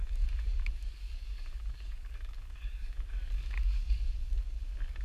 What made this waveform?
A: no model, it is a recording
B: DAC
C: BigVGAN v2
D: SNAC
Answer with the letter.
B